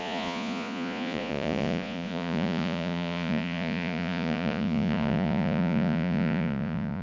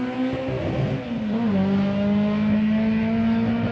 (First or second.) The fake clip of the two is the first